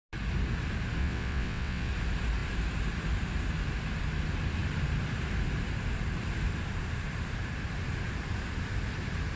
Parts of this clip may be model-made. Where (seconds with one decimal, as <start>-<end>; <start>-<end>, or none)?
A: 1.0-1.9